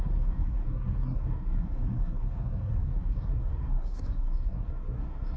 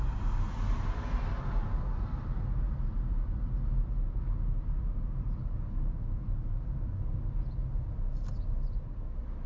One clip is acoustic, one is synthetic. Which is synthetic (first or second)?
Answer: first